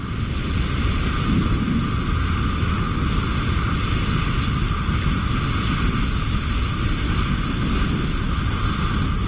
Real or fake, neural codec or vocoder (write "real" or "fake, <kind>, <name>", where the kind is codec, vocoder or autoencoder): real